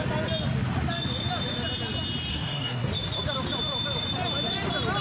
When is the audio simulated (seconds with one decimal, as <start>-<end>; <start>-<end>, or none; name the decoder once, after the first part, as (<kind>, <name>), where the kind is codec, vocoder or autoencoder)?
2.3-2.9 (codec, SNAC)